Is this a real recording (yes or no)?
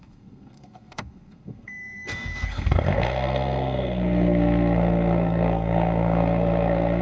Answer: no